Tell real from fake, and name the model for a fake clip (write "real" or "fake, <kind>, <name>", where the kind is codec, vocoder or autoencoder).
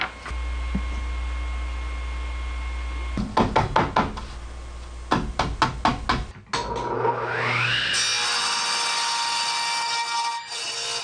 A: real